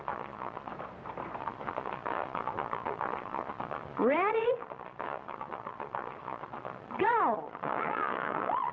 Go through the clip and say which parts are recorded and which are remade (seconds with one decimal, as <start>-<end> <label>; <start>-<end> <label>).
0.0-0.7 remade; 0.7-1.4 recorded; 1.4-8.7 remade